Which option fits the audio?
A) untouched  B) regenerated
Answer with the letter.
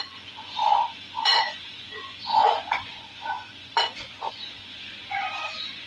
B